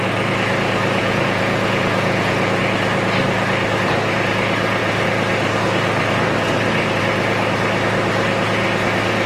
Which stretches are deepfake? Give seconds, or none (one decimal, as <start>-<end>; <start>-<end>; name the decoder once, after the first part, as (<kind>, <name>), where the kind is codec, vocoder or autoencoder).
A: 1.0-2.6 (vocoder, Vocos)

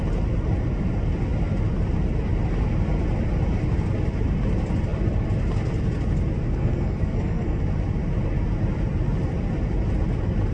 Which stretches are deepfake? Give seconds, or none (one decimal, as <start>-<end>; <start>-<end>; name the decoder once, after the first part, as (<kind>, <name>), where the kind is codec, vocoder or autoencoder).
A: 6.6-7.6 (codec, SNAC)

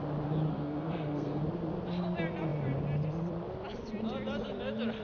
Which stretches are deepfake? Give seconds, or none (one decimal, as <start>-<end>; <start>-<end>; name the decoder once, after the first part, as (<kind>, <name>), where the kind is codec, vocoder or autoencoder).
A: 0.5-1.4 (codec, SNAC)

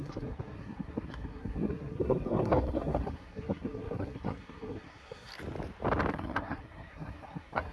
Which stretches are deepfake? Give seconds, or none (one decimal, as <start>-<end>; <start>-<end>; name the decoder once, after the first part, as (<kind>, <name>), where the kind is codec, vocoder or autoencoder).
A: 0.0-5.3 (codec, SNAC); 6.1-7.7

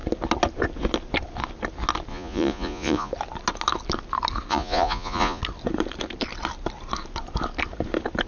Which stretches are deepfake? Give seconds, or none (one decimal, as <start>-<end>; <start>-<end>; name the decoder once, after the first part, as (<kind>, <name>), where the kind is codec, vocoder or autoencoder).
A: 2.1-3.1 (vocoder, Vocos); 4.5-5.4

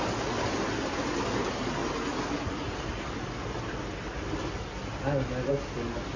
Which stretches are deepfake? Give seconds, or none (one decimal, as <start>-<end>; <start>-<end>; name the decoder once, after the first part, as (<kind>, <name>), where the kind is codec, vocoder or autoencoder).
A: none

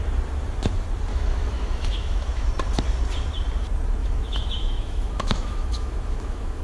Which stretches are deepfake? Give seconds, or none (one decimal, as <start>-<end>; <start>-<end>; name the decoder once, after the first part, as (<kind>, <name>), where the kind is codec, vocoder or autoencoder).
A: 1.1-2.5 (autoencoder, DAC-VAE); 4.0-6.6

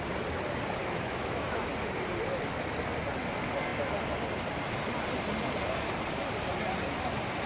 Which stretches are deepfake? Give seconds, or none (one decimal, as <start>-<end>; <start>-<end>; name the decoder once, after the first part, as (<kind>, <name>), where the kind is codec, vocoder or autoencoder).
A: 0.8-1.7 (autoencoder, DAC-VAE)